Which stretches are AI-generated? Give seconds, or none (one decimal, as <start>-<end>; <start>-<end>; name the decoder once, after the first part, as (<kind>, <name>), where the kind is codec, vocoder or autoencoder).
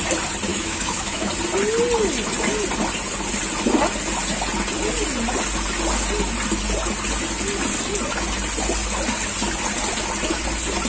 0.5-1.3 (autoencoder, DAC-VAE)